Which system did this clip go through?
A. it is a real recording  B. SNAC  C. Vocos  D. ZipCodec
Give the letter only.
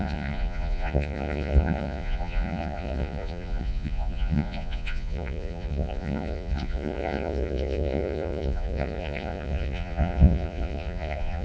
C